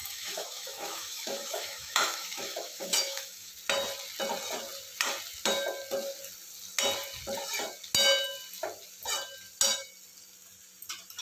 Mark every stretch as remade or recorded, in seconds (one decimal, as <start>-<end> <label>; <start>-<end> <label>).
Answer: 0.0-3.5 remade; 3.5-11.2 recorded